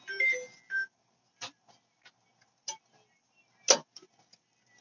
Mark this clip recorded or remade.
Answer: recorded